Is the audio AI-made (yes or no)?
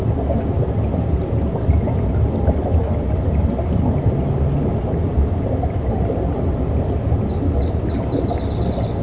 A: no